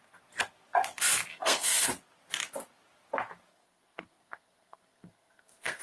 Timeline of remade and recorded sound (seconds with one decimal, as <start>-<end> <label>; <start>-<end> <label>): 0.0-1.3 recorded; 1.3-1.9 remade; 1.9-3.5 recorded; 3.5-5.8 remade